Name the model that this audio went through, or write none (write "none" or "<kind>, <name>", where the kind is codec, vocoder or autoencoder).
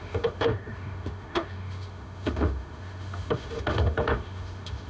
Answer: autoencoder, DAC-VAE